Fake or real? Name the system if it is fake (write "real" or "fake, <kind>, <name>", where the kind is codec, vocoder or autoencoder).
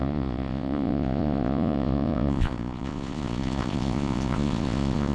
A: fake, vocoder, Vocos